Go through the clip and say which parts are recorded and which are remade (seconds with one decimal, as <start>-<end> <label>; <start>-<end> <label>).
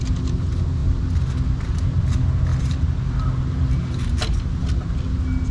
0.0-5.5 recorded